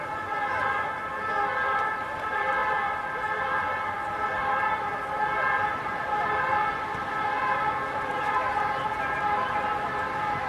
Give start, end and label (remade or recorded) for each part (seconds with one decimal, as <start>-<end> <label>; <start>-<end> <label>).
0.0-10.5 recorded